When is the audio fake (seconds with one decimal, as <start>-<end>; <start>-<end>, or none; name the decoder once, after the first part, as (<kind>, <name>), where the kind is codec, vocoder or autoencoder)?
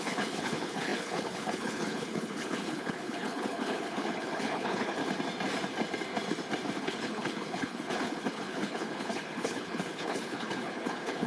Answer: 0.0-5.0 (codec, HILCodec); 6.8-11.3